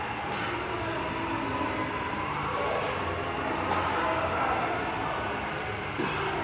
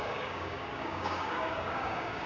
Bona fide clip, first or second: first